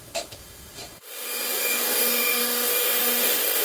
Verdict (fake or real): fake